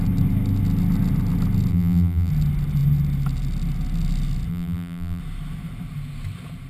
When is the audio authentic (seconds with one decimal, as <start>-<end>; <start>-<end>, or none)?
0.0-1.7; 2.3-4.5; 5.2-6.7